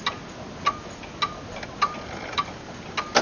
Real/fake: real